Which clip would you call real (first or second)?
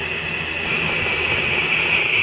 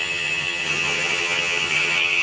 first